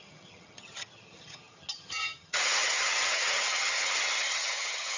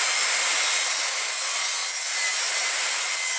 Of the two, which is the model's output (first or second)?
first